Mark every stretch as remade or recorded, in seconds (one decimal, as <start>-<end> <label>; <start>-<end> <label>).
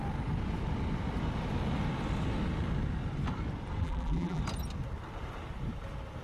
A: 0.0-3.8 recorded; 3.8-4.4 remade; 4.4-6.2 recorded